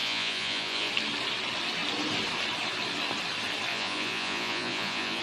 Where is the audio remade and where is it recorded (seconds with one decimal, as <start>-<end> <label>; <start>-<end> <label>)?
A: 0.0-0.9 remade; 0.9-3.7 recorded; 3.7-5.2 remade